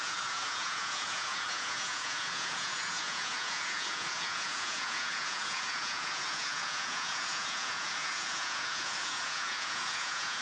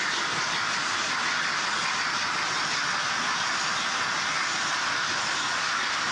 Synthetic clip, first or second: first